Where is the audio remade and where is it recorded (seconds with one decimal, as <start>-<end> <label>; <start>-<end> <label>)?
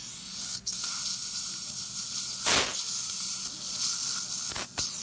0.0-0.4 recorded; 0.4-0.9 remade; 0.9-5.0 recorded